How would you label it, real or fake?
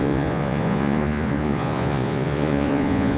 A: fake